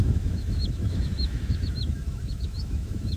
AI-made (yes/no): yes